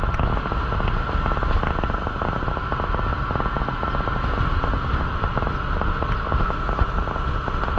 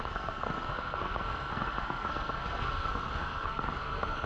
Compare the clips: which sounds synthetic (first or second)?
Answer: second